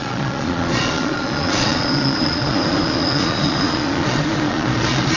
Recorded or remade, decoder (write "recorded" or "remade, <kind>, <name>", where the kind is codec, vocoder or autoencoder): remade, vocoder, Vocos